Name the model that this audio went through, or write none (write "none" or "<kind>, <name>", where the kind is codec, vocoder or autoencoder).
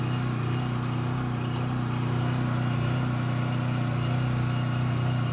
none